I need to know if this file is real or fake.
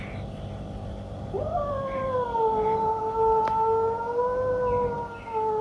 real